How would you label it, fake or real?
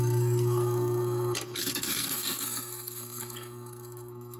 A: fake